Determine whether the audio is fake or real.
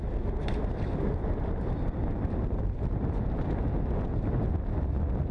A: real